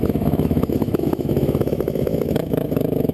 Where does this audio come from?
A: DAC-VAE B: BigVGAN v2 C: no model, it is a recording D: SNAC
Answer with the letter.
A